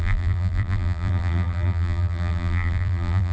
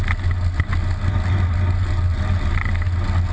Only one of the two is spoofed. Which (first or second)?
first